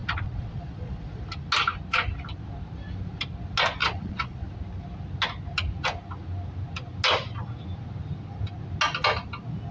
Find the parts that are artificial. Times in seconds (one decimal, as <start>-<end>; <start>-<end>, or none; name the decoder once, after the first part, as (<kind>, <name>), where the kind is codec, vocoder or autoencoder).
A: 0.0-1.2 (vocoder, Vocos); 3.8-4.5